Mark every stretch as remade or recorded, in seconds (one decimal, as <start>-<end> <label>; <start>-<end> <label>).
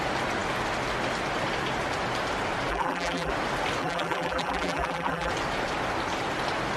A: 0.0-2.7 recorded; 2.7-3.3 remade; 3.3-3.8 recorded; 3.8-5.3 remade; 5.3-6.8 recorded